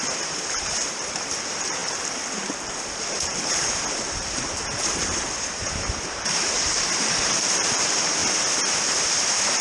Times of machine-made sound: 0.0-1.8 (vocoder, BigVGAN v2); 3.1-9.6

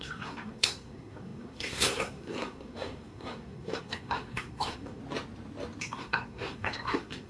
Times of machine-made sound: 0.0-5.0 (codec, SNAC); 5.8-7.3

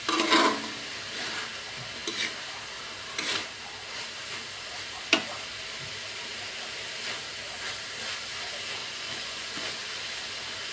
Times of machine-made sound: 8.8-9.8 (vocoder, Vocos)

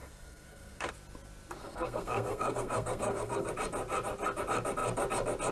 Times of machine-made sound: 0.0-0.9 (codec, SNAC); 1.6-3.5

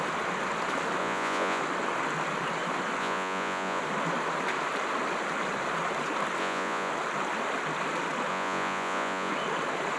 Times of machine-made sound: 1.0-1.6 (vocoder, Vocos); 3.0-3.8; 6.4-6.9; 8.3-9.3